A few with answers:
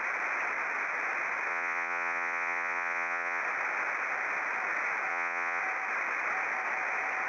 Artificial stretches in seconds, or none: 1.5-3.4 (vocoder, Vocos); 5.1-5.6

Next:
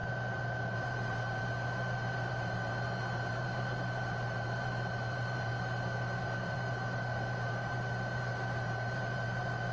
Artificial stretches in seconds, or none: 0.0-2.7 (vocoder, BigVGAN v2); 3.3-5.5; 6.2-9.7

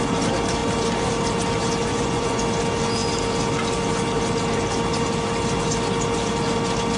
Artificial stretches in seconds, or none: 1.8-2.4 (vocoder, Vocos)

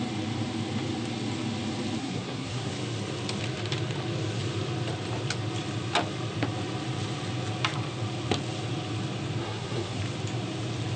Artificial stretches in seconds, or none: 2.0-2.7 (codec, SNAC); 9.4-10.0

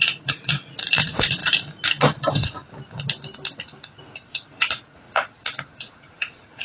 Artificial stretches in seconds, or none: 0.0-1.4 (vocoder, Vocos); 4.5-6.6

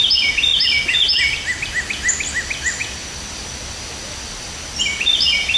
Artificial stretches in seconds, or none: none